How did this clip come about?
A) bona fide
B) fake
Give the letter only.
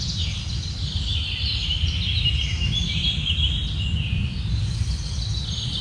A